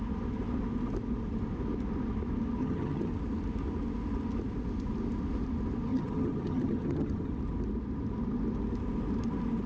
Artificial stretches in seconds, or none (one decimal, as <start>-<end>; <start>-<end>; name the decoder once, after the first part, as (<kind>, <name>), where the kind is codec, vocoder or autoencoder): 2.6-3.1 (vocoder, HiFi-GAN); 5.9-7.3